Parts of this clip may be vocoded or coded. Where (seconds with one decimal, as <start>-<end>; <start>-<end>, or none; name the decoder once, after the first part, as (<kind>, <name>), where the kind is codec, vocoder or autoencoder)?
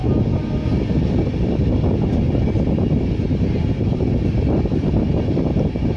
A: none